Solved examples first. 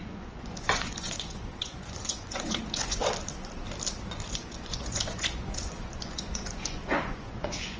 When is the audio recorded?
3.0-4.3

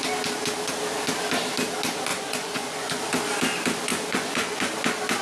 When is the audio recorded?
0.0-2.1; 3.0-3.9; 4.7-5.2

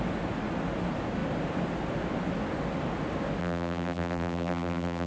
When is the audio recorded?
0.0-3.4

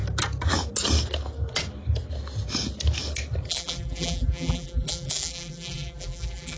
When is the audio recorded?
0.0-3.5

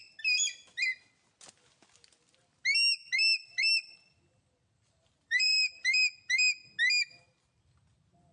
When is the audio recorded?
0.0-3.5; 6.0-8.3

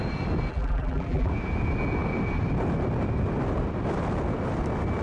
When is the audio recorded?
0.0-0.5; 1.3-5.0

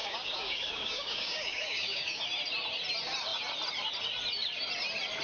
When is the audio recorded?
2.2-5.2

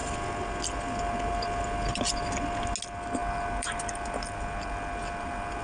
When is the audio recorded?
0.0-5.6